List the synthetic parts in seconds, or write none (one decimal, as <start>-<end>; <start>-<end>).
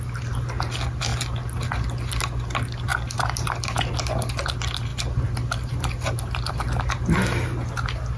none